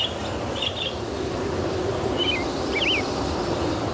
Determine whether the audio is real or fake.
real